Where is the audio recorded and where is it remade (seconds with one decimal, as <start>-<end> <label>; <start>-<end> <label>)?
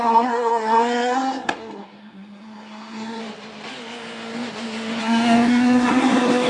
0.0-3.2 remade; 3.2-5.0 recorded; 5.0-6.5 remade